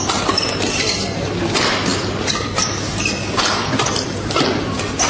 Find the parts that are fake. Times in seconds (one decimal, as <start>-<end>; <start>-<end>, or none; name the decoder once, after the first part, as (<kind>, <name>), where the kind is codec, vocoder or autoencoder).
none